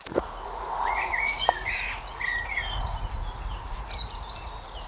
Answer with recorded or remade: remade